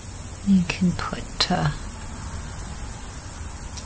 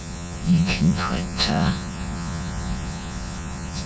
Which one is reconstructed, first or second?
second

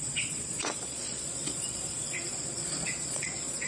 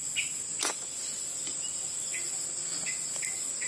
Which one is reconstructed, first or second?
first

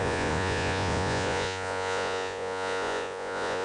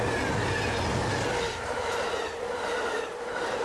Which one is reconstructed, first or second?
first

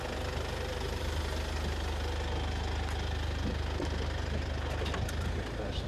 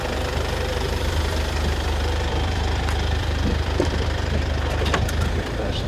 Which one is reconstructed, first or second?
second